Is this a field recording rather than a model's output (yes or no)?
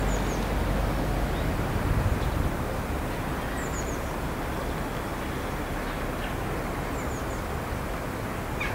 yes